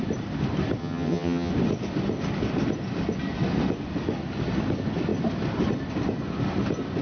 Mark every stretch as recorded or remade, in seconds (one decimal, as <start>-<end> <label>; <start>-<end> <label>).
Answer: 0.0-0.8 recorded; 0.8-1.5 remade; 1.5-7.0 recorded